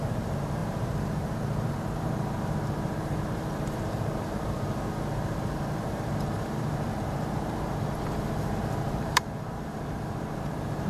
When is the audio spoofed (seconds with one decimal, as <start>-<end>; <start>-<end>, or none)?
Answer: 0.0-10.9